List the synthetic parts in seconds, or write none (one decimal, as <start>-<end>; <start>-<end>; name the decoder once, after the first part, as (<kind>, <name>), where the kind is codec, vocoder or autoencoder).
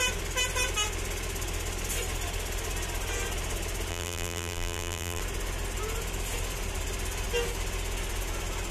3.9-5.2 (vocoder, BigVGAN v2)